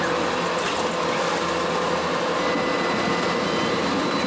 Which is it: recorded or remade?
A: recorded